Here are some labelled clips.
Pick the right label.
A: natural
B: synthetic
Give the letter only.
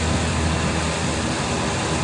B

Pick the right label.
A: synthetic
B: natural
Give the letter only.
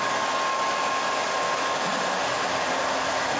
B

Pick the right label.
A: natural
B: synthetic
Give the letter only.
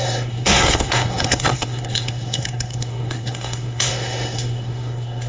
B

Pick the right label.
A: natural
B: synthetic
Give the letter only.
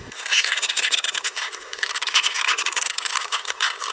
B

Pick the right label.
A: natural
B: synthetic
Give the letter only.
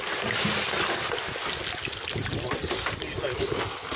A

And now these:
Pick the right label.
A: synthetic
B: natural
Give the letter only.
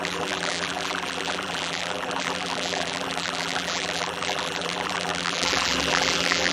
A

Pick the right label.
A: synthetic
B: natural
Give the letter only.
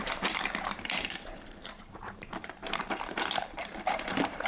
A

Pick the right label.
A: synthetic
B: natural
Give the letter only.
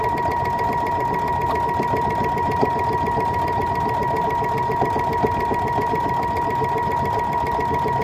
B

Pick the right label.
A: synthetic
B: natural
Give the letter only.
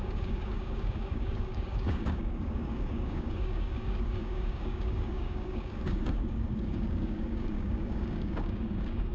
A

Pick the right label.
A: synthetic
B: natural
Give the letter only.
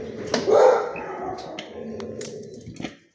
B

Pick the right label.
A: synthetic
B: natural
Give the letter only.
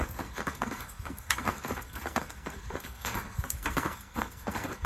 A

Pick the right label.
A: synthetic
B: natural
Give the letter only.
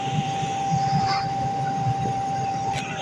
A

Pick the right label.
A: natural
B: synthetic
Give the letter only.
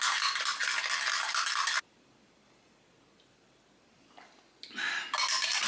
A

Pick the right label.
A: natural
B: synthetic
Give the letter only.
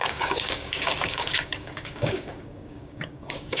B